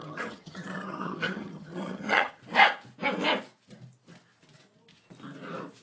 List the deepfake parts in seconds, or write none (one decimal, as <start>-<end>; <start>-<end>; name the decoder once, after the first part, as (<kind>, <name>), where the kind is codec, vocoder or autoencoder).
0.0-2.4 (vocoder, HiFi-GAN)